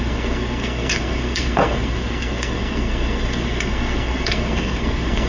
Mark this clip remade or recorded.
remade